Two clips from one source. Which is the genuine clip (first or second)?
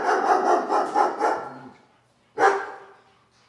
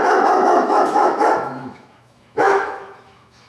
first